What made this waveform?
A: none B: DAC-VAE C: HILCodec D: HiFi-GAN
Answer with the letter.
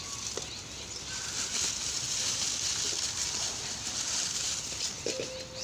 A